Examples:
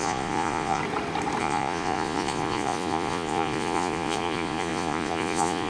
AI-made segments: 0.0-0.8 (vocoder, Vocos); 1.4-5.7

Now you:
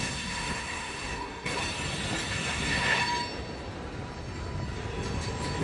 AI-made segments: 0.0-1.6 (codec, SNAC); 2.3-3.0

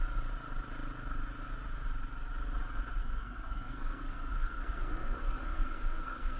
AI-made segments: 3.0-6.4 (codec, SNAC)

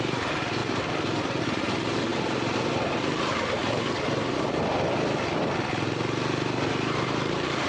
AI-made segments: 0.0-3.6 (vocoder, BigVGAN v2); 6.7-7.7

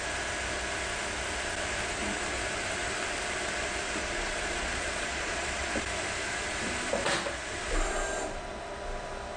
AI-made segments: 4.0-5.7 (vocoder, Vocos)